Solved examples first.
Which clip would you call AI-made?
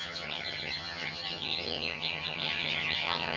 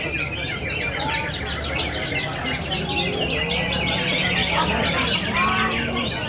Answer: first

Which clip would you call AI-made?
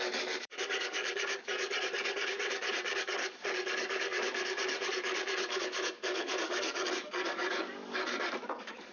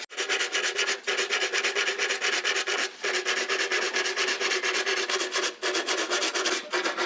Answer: first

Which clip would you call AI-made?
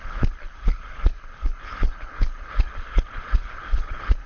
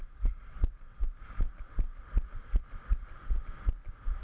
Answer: first